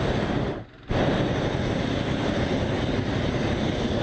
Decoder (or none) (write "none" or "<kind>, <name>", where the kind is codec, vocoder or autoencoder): none